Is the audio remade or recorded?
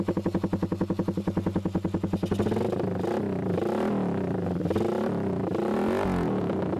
recorded